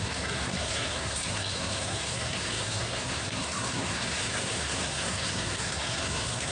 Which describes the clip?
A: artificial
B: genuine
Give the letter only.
A